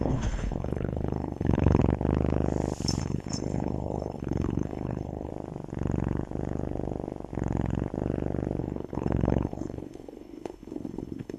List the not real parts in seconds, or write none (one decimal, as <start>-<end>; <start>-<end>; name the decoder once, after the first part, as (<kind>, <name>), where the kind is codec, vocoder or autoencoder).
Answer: 0.0-1.8 (codec, HILCodec); 3.0-5.3; 8.6-11.4